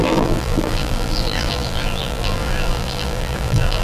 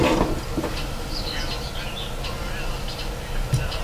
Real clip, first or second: second